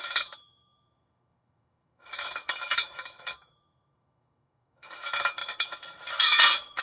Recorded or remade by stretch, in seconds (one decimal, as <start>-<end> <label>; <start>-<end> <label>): 0.0-6.8 remade